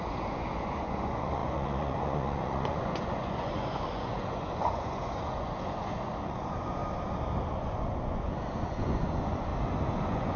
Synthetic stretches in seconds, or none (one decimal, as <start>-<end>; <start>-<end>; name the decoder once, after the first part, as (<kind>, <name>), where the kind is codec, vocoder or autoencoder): 0.0-6.8 (vocoder, Vocos); 7.5-9.5; 10.0-10.4